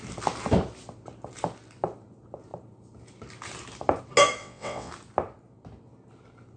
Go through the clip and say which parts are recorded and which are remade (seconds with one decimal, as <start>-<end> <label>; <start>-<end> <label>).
0.0-4.4 recorded; 4.4-4.9 remade; 4.9-6.6 recorded